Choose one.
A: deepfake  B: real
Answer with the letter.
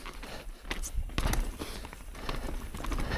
B